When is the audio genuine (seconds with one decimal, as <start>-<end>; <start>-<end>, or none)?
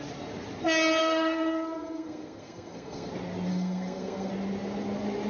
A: 0.0-1.0; 3.1-3.5; 4.3-5.3